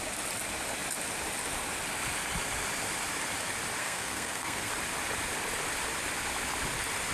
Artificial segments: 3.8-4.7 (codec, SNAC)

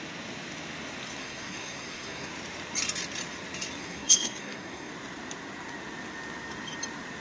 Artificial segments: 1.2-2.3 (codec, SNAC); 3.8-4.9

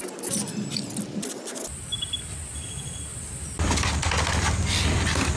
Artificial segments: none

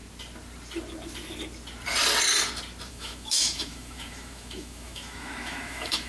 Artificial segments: 2.9-6.1 (autoencoder, DAC-VAE)